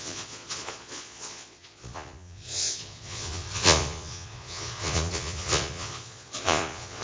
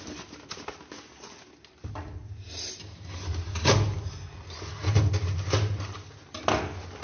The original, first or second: second